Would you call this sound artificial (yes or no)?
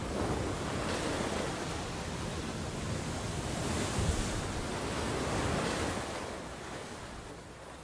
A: no